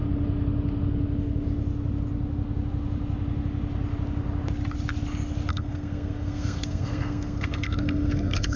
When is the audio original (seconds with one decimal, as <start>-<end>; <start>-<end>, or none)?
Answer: 0.0-5.5